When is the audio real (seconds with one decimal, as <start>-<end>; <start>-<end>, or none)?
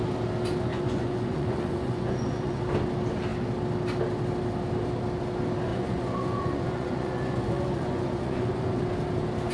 0.0-0.7; 2.6-5.7; 8.8-9.5